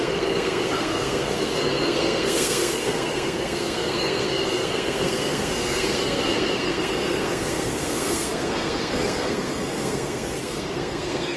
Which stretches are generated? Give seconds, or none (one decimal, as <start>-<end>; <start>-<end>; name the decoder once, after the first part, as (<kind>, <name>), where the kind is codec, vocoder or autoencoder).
0.0-11.4 (codec, SNAC)